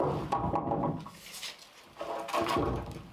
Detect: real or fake real